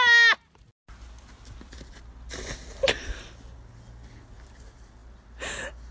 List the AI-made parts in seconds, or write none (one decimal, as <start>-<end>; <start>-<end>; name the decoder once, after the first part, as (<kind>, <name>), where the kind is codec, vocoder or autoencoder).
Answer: none